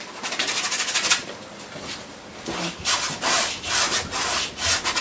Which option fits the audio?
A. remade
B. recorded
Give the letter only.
B